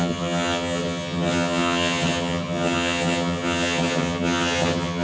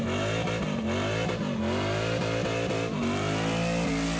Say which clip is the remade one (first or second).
first